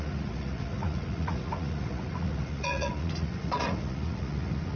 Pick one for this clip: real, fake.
fake